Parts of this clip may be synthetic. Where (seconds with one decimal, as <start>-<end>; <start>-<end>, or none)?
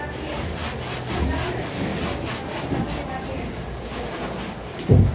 none